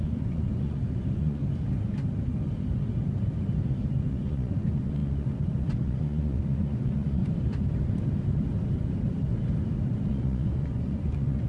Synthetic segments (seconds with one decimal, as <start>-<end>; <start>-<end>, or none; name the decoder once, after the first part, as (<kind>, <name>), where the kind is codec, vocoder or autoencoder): 0.0-1.4 (vocoder, Vocos); 4.1-7.2; 10.1-11.5